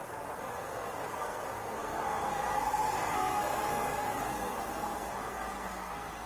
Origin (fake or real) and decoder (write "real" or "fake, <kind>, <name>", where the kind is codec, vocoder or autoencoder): fake, codec, SNAC